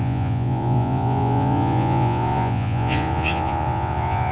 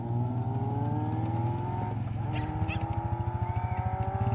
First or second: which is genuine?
second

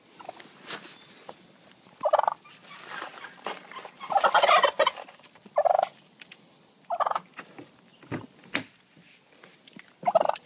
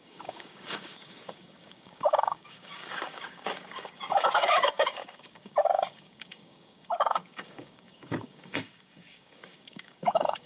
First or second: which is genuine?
first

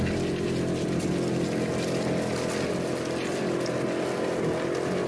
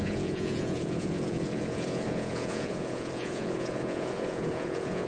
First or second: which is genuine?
first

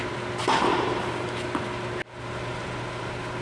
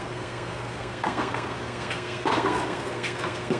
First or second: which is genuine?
first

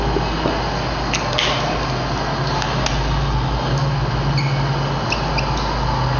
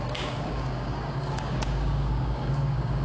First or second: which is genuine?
first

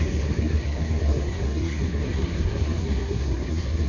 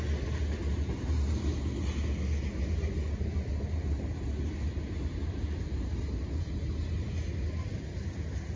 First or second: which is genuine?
second